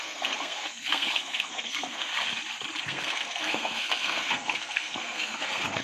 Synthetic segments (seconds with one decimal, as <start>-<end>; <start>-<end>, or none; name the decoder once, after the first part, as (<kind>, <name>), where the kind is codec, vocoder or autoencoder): 0.0-2.1 (codec, SNAC); 2.8-5.8